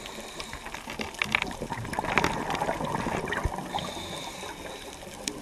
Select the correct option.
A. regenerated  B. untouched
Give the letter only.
B